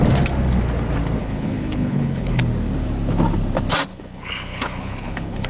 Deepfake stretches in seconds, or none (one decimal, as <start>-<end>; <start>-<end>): 1.2-2.4; 3.9-5.5